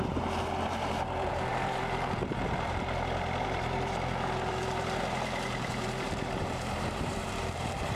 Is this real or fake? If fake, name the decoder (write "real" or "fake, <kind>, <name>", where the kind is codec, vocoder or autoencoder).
fake, vocoder, BigVGAN v2